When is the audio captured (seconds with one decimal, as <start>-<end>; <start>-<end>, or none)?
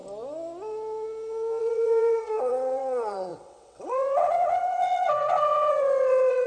0.0-1.6